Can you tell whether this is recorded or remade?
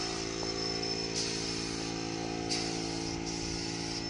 recorded